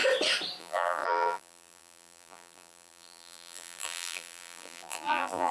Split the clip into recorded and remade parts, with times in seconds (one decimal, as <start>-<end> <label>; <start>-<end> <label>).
0.0-0.6 recorded; 0.6-5.5 remade